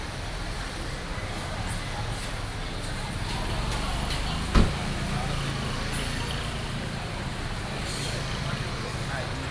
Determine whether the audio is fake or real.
real